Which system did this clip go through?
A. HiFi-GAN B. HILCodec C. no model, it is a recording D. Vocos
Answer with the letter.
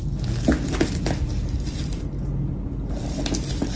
C